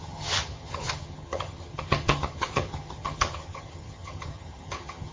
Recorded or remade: remade